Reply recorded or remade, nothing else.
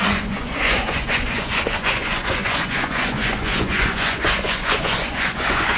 remade